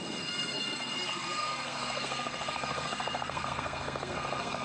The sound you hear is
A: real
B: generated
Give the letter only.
B